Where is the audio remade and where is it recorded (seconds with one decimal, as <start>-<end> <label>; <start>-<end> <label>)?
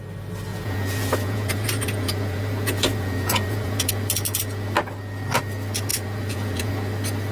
0.0-0.5 recorded; 0.5-3.9 remade; 3.9-5.9 recorded; 5.9-6.7 remade; 6.7-7.3 recorded